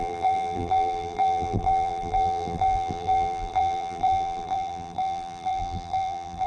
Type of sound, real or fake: fake